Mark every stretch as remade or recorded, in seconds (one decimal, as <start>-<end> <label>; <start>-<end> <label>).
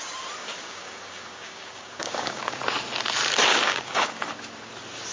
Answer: 0.0-0.4 recorded; 0.4-2.6 remade; 2.6-3.5 recorded; 3.5-4.3 remade; 4.3-5.1 recorded